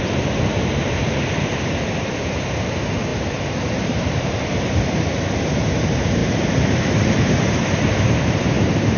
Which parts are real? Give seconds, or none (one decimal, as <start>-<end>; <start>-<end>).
6.2-6.9

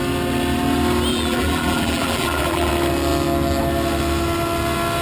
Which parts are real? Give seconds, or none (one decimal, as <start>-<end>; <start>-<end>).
0.0-1.1; 2.7-5.0